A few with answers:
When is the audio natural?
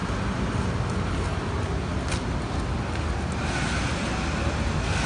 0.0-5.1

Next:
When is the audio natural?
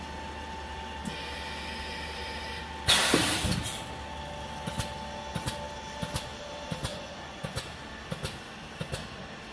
0.0-6.9; 7.7-9.5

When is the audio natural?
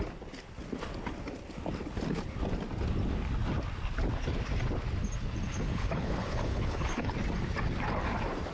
0.0-5.5; 7.1-8.5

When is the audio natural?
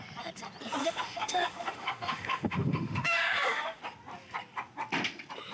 0.0-0.8; 3.8-5.5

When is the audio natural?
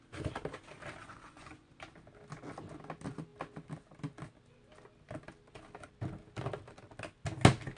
0.0-1.0; 1.7-7.8